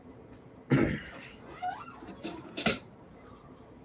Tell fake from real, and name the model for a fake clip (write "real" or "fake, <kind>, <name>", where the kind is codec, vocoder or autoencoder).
fake, vocoder, BigVGAN v2